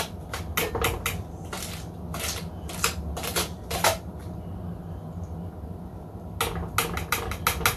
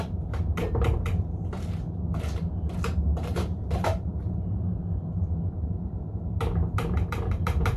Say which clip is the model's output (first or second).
second